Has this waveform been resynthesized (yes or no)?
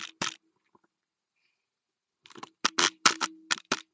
no